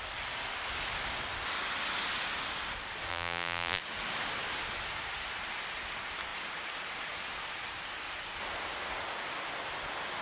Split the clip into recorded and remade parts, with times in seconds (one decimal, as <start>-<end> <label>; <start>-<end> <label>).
0.0-3.1 recorded; 3.1-3.8 remade; 3.8-10.2 recorded